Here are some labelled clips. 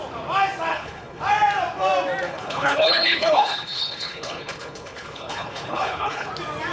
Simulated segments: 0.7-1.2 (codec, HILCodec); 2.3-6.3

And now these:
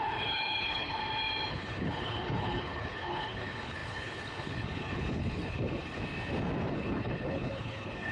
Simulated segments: 0.0-1.0 (codec, HILCodec); 1.5-6.0; 6.7-8.1

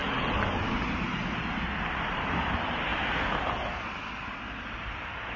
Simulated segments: none

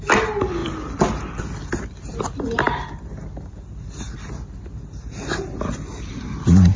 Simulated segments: none

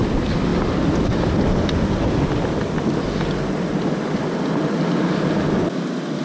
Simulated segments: none